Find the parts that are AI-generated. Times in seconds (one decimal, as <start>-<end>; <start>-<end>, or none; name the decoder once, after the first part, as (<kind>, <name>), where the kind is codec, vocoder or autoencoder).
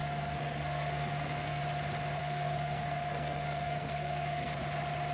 0.0-1.6 (codec, SNAC); 2.2-4.6